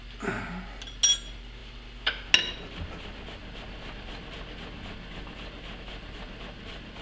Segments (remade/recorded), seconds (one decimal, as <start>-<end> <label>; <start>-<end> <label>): 0.0-7.0 recorded